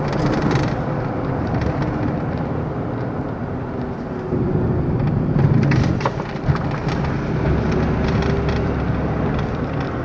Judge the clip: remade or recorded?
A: remade